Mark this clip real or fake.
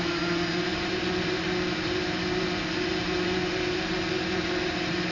fake